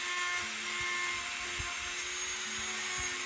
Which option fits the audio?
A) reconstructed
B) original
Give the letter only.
B